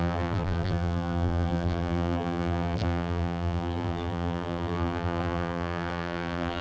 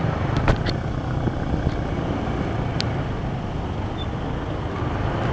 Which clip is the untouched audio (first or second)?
second